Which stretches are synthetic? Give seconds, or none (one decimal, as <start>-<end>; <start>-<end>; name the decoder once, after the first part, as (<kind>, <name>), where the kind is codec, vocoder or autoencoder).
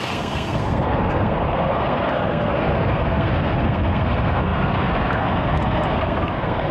0.0-6.7 (codec, SNAC)